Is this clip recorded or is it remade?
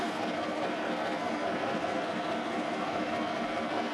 remade